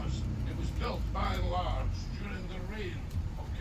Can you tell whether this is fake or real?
fake